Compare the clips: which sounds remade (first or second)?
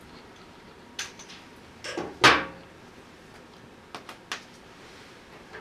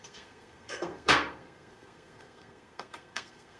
second